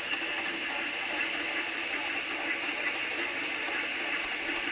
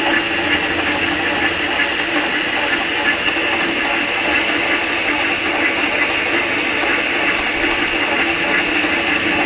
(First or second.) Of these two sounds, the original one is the second